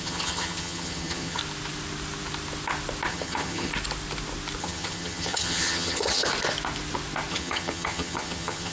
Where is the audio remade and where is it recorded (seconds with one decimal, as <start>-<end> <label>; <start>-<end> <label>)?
0.0-1.4 remade; 1.4-3.1 recorded; 3.1-3.7 remade; 3.7-4.6 recorded; 4.6-6.3 remade; 6.3-7.3 recorded; 7.3-8.7 remade